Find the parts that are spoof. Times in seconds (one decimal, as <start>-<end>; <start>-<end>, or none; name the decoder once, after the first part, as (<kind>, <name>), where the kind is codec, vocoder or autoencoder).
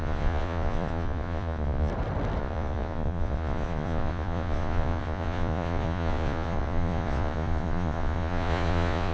0.0-1.9 (vocoder, Vocos); 2.4-9.1